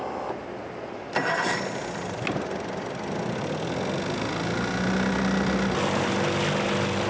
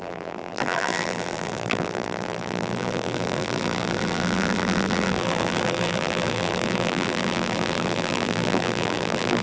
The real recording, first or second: first